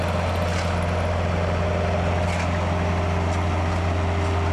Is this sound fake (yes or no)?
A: no